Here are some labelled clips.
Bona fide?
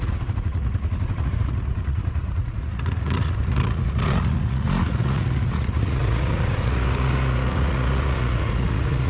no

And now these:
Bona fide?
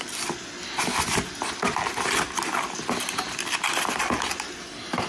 yes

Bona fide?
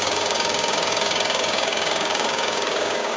no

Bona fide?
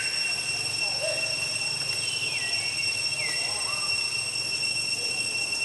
yes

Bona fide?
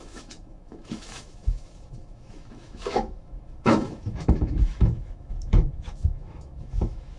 no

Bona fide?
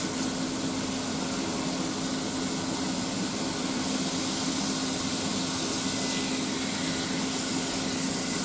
yes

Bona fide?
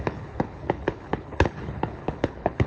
no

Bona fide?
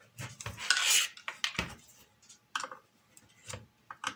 yes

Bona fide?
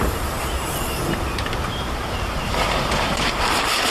no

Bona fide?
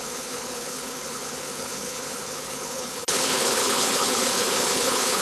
no